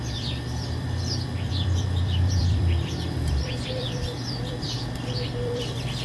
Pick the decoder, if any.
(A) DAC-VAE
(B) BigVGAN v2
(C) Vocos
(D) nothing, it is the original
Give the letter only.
B